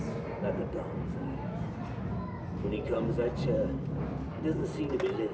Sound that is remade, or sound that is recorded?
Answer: recorded